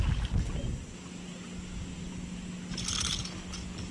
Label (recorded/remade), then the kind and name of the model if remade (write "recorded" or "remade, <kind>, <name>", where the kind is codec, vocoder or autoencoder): recorded